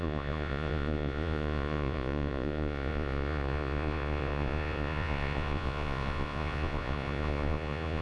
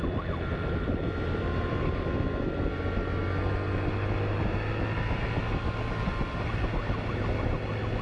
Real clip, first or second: second